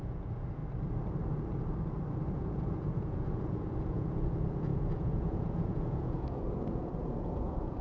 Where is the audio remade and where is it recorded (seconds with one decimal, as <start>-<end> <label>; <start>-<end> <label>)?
0.0-0.6 remade; 0.6-2.3 recorded; 2.3-7.8 remade